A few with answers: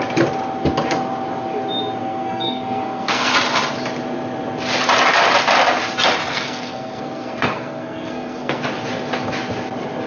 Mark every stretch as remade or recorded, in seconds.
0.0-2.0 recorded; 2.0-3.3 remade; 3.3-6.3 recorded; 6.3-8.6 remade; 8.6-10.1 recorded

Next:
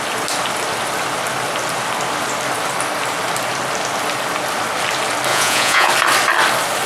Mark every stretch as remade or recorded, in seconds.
0.0-5.3 recorded; 5.3-5.9 remade; 5.9-6.9 recorded